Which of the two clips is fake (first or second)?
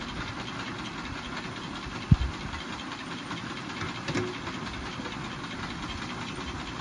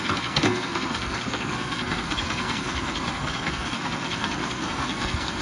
second